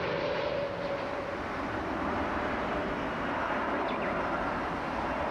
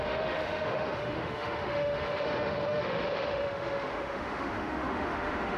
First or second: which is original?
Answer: first